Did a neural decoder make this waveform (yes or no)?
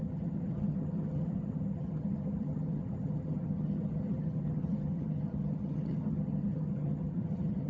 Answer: yes